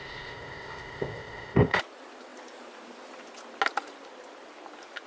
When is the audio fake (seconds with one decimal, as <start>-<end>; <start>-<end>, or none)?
0.0-1.8